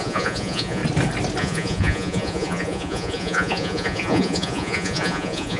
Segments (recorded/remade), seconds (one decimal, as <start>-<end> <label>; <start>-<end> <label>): 0.0-0.8 remade; 0.8-1.4 recorded; 1.4-5.6 remade

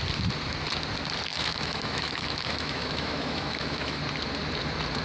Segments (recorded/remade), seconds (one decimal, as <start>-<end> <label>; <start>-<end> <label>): 0.0-1.3 recorded; 1.3-4.0 remade; 4.0-5.0 recorded

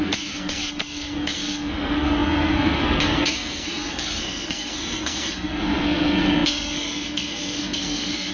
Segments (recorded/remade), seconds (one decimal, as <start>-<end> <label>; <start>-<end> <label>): 0.0-8.3 remade

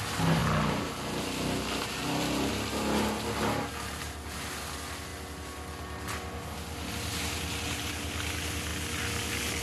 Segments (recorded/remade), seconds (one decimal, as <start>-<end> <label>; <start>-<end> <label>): 0.0-9.6 recorded

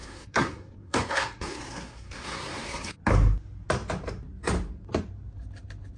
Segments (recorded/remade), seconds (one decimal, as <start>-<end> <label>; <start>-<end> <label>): 0.0-3.0 remade; 3.0-6.0 recorded

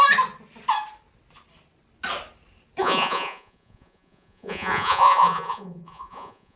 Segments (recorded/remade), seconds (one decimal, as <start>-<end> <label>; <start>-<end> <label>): 0.0-2.8 recorded; 2.8-6.6 remade

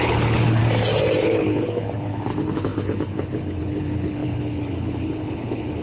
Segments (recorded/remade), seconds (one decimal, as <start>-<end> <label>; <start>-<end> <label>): 0.0-0.6 remade; 0.6-1.2 recorded; 1.2-5.8 remade

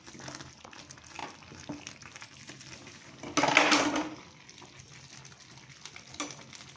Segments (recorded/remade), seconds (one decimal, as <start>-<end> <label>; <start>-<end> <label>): 0.0-6.8 recorded